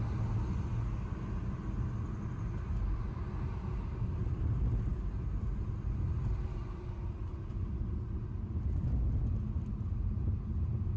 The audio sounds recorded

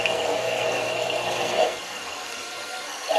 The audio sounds remade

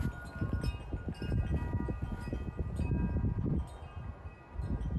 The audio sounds recorded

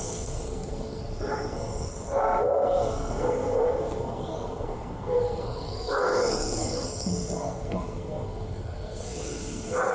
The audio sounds remade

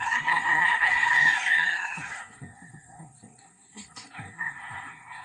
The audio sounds remade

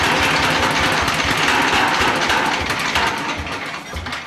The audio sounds recorded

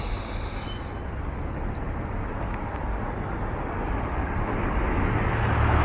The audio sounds recorded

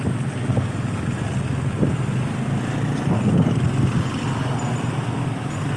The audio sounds recorded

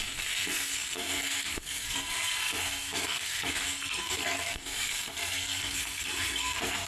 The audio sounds remade